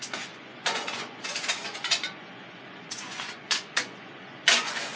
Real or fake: fake